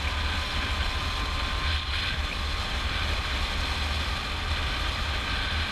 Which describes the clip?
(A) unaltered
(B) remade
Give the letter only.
A